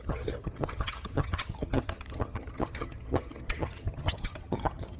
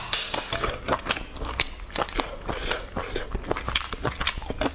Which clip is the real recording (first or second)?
second